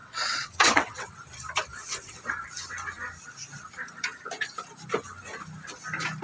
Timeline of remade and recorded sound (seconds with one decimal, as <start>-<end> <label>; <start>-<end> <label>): 0.0-1.1 remade; 1.1-1.7 recorded; 1.7-2.2 remade; 2.2-6.2 recorded